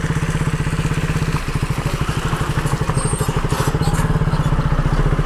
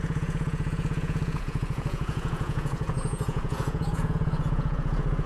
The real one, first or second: first